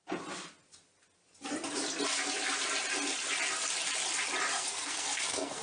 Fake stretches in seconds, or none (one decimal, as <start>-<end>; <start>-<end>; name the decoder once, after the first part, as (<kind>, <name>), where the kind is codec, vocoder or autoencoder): 4.5-5.6 (codec, SNAC)